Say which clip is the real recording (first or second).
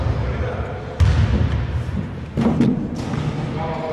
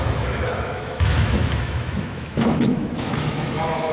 first